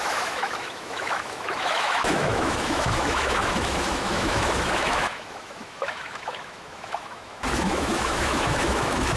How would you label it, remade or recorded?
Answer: remade